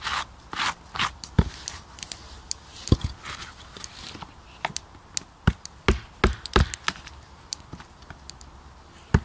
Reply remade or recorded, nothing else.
recorded